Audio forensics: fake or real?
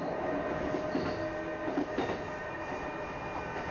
real